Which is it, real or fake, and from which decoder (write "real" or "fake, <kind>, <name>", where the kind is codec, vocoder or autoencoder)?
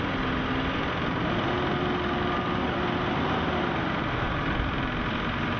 real